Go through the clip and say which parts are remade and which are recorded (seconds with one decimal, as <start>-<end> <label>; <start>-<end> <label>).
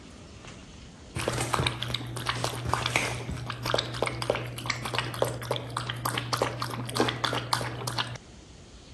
0.0-8.9 recorded